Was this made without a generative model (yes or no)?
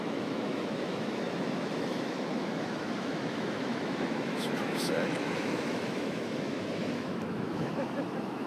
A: no